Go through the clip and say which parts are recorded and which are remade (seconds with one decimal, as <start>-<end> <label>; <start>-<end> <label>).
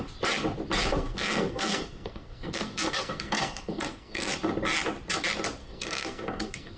0.0-0.9 recorded; 0.9-4.3 remade; 4.3-5.6 recorded; 5.6-6.8 remade